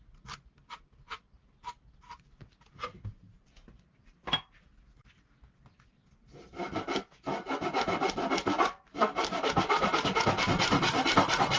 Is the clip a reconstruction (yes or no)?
no